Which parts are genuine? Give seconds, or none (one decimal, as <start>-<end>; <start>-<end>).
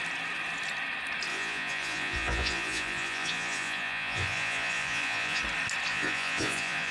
0.0-1.3; 5.4-5.9